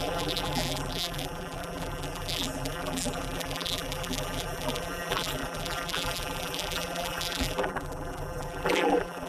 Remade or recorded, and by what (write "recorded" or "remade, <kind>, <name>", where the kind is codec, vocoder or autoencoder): remade, vocoder, BigVGAN v2